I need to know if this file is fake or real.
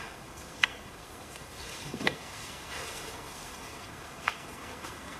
fake